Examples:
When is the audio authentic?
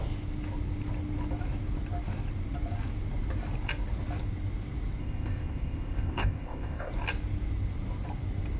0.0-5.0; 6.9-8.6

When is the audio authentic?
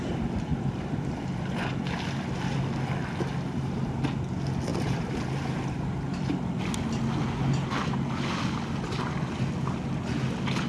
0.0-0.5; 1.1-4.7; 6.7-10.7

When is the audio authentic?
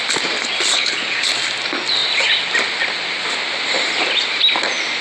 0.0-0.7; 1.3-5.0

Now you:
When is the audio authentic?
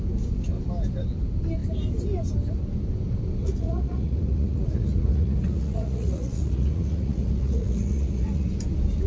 0.0-3.4; 8.5-9.1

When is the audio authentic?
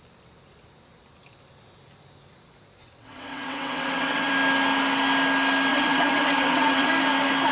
0.0-2.8; 4.3-5.7; 6.9-7.5